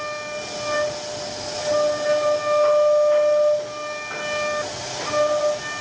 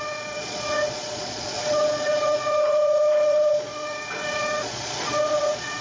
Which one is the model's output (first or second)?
second